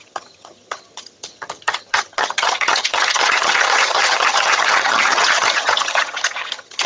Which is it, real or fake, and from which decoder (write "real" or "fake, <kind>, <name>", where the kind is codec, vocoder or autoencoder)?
fake, vocoder, HiFi-GAN